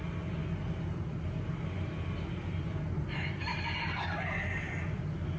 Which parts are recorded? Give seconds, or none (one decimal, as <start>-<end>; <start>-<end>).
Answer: 0.0-5.4